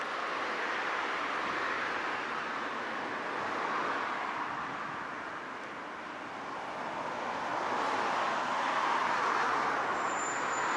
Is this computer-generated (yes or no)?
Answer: no